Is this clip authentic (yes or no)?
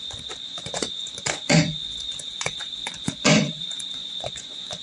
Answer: no